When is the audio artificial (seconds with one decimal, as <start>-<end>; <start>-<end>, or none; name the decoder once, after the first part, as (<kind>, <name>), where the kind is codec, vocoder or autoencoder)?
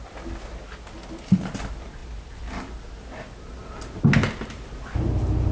none